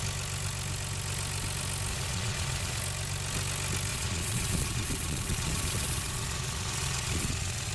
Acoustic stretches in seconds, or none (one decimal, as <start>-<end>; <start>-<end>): 0.0-1.9; 2.8-3.9